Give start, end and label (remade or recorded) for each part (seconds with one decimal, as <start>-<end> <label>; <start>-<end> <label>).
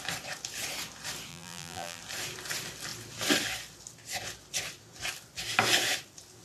0.0-1.3 recorded; 1.3-2.0 remade; 2.0-6.4 recorded